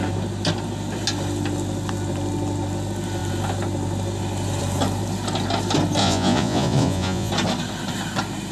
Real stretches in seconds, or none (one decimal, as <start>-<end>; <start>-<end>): 0.0-6.0; 7.3-8.5